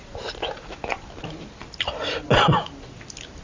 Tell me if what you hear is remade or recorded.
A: recorded